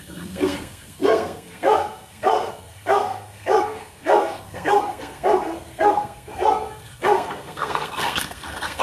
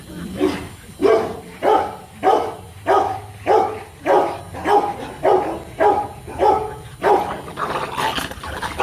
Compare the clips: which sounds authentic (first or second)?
second